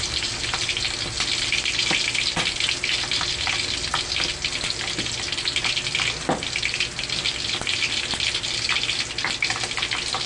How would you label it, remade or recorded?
recorded